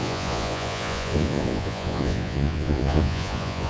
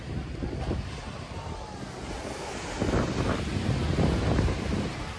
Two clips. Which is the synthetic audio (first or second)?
first